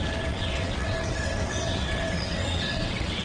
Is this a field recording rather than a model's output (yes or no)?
no